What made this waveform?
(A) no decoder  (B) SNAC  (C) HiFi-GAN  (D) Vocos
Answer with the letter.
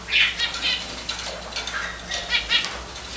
A